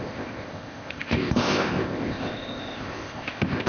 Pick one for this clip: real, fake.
fake